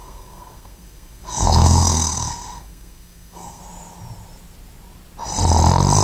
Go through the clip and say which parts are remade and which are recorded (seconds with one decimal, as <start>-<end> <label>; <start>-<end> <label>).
0.0-3.6 remade; 3.6-6.0 recorded